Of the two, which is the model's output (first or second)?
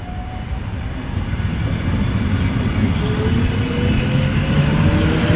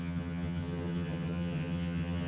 second